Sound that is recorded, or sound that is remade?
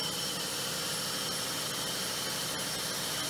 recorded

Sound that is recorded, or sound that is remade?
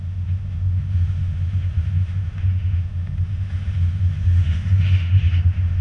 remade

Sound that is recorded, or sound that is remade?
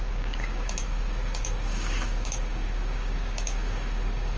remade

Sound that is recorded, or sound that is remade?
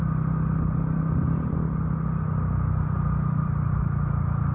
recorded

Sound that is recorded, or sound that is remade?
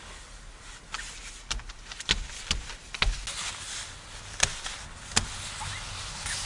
recorded